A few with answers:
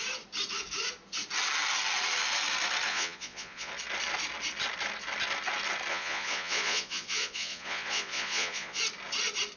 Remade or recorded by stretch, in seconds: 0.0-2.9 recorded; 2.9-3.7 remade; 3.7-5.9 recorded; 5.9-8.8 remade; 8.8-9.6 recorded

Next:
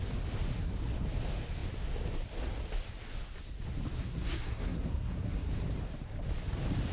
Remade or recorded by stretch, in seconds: 0.0-3.9 recorded; 3.9-5.5 remade; 5.5-6.9 recorded

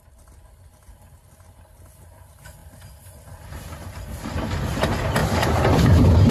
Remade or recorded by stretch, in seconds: 0.0-2.6 recorded; 2.6-4.7 remade; 4.7-5.2 recorded; 5.2-5.8 remade; 5.8-6.3 recorded

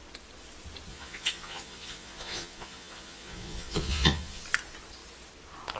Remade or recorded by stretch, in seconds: 0.0-0.9 recorded; 0.9-4.4 remade; 4.4-5.8 recorded

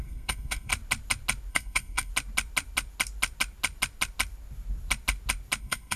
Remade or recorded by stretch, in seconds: 0.0-0.7 remade; 0.7-1.5 recorded; 1.5-2.1 remade; 2.1-5.6 recorded; 5.6-6.0 remade

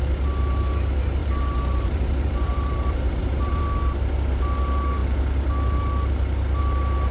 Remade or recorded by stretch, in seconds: 0.0-1.2 recorded; 1.2-3.6 remade; 3.6-7.1 recorded

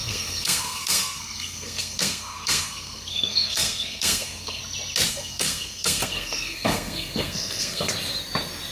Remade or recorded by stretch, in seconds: 0.0-4.6 remade; 4.6-5.1 recorded; 5.1-7.9 remade; 7.9-8.7 recorded

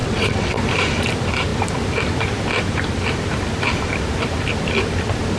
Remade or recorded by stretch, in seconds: 0.0-0.6 remade; 0.6-5.4 recorded